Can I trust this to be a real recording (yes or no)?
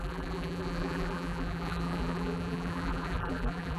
no